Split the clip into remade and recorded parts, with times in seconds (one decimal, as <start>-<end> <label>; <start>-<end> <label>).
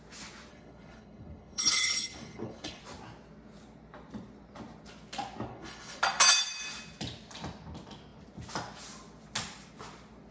0.0-0.5 recorded; 0.5-2.8 remade; 2.8-5.5 recorded; 5.5-6.0 remade; 6.0-10.3 recorded